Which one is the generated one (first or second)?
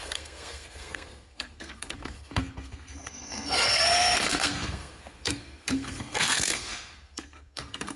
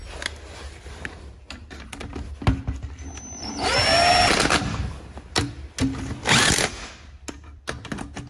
first